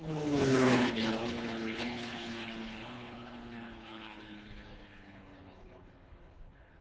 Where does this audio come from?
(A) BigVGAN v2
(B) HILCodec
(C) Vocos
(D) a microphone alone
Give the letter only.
B